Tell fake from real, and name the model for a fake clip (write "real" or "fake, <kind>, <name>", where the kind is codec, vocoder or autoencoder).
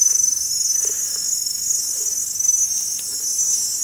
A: fake, codec, DAC